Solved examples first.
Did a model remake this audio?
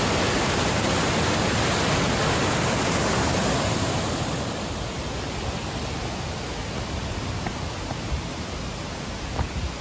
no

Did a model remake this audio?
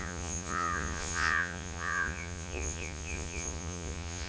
yes